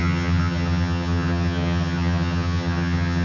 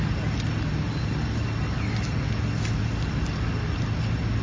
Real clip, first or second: second